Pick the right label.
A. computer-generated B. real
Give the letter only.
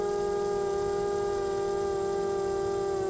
B